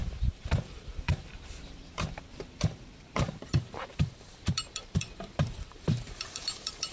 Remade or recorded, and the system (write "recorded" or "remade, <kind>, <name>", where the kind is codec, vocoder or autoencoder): remade, vocoder, BigVGAN v2